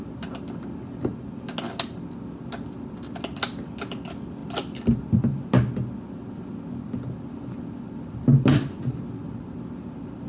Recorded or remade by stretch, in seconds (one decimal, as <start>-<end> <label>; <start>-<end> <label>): 0.0-10.3 recorded